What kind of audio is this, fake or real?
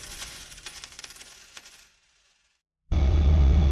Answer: fake